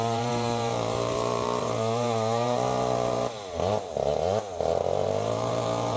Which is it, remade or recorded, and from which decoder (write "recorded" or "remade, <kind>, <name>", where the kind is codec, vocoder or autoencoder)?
remade, vocoder, BigVGAN v2